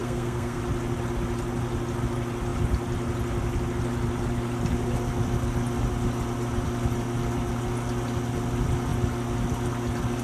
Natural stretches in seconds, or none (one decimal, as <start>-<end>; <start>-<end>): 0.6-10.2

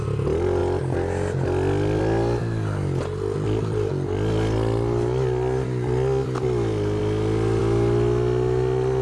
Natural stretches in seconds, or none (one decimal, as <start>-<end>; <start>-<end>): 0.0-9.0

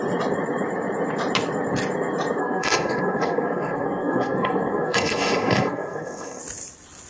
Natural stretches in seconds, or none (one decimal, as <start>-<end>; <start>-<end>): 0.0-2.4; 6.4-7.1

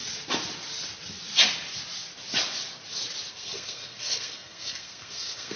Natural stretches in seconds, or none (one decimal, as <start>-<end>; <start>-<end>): 0.0-3.3

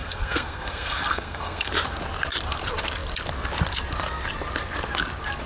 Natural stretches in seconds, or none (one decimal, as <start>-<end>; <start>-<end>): 1.7-5.5

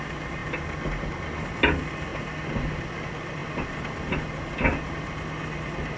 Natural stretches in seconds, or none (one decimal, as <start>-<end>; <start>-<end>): 0.0-6.0